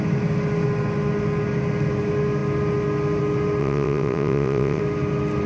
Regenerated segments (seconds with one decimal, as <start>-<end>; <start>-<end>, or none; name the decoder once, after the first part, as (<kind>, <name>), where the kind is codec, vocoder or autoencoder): 3.6-4.8 (vocoder, WaveNeXt)